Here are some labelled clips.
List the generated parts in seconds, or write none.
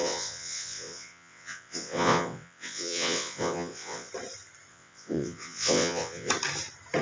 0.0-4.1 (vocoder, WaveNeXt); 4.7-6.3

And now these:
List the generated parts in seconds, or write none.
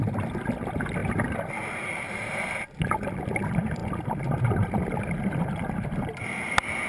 0.0-1.0 (vocoder, BigVGAN v2); 1.9-6.9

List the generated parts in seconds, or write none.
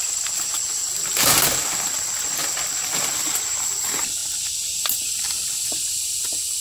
none